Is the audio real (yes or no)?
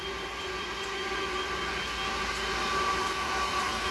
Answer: yes